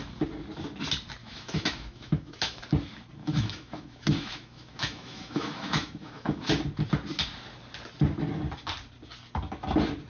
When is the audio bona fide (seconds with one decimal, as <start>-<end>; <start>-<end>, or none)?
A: 0.0-1.2; 2.6-3.2; 6.5-10.1